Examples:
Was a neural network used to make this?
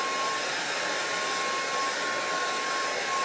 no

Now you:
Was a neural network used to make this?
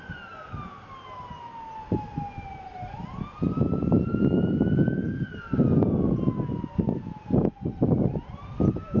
no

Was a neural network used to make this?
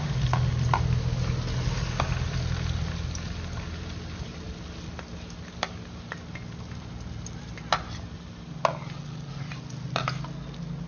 no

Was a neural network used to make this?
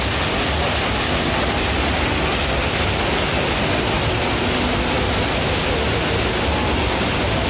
no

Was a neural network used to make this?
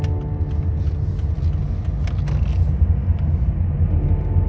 no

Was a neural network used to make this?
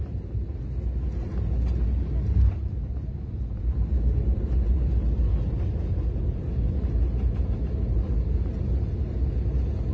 no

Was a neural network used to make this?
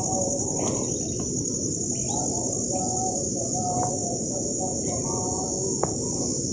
no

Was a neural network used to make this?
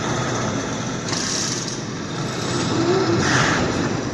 no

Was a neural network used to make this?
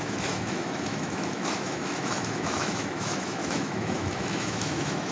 yes